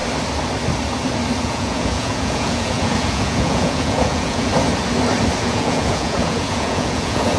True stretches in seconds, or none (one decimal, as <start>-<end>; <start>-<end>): 0.0-1.4; 4.5-5.4